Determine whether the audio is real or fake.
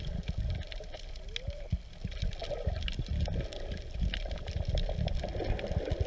real